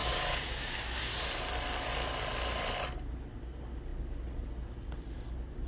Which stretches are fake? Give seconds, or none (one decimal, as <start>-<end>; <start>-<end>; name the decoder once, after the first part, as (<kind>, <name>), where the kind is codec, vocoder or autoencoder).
0.0-1.1 (codec, DAC)